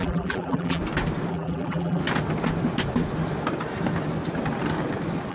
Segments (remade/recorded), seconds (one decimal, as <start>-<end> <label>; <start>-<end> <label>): 0.0-0.8 remade; 0.8-1.3 recorded; 1.3-2.0 remade; 2.0-5.3 recorded